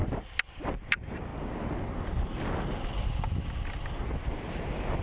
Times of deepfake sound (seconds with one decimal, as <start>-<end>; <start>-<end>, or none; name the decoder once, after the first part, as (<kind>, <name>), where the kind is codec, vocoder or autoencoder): 0.5-1.3 (vocoder, BigVGAN v2); 4.3-5.0